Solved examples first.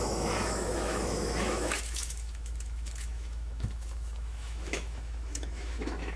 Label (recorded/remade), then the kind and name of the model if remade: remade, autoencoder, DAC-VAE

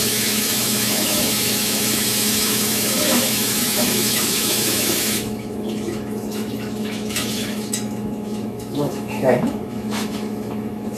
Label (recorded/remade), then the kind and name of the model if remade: remade, autoencoder, DAC-VAE